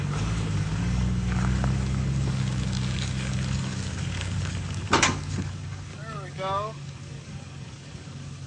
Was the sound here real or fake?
fake